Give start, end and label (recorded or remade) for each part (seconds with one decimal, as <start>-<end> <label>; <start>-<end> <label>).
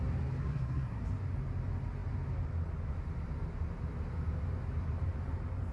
0.0-0.4 recorded; 0.4-1.0 remade; 1.0-5.7 recorded